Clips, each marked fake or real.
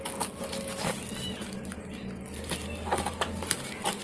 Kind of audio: real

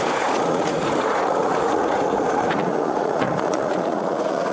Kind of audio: fake